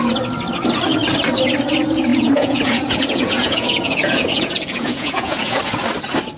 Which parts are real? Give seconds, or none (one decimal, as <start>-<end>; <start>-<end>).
0.0-2.1; 5.6-6.4